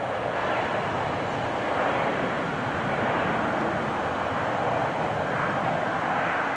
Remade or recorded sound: recorded